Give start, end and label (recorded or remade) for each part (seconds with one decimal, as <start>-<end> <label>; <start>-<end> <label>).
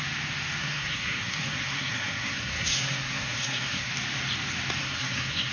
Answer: 0.0-0.6 recorded; 0.6-3.9 remade; 3.9-4.8 recorded; 4.8-5.5 remade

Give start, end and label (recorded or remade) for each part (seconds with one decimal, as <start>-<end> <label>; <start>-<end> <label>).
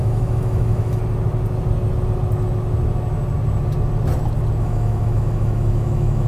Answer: 0.0-1.0 remade; 1.0-4.6 recorded; 4.6-6.3 remade